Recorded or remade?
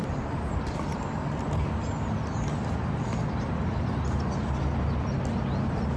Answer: recorded